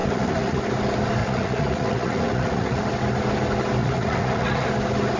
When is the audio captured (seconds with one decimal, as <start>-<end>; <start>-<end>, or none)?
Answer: 0.6-1.2; 2.8-3.8; 4.7-5.2